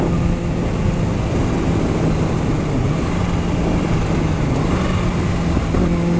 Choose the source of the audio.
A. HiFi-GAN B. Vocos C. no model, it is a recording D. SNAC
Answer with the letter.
C